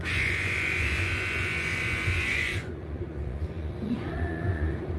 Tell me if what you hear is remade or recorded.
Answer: remade